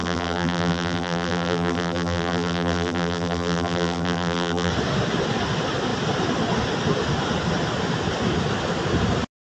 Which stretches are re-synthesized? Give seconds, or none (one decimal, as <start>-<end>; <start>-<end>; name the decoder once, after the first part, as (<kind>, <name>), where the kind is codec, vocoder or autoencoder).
0.0-4.7 (vocoder, BigVGAN v2)